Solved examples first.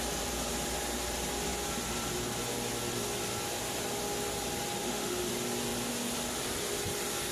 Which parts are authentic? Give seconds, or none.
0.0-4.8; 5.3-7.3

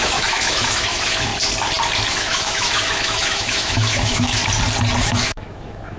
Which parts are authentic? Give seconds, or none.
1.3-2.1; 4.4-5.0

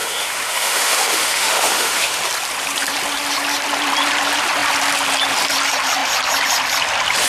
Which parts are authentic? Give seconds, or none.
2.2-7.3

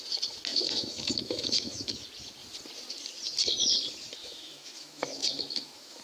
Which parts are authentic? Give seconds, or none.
0.0-0.5; 2.0-4.2

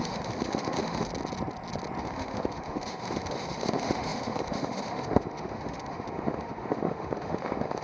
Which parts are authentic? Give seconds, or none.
1.1-2.0